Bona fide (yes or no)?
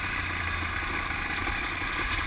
yes